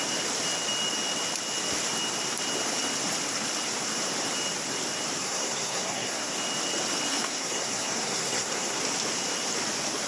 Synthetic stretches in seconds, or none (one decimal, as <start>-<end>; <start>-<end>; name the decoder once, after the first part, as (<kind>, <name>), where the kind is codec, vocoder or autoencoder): 5.2-6.3 (codec, SNAC); 7.1-8.8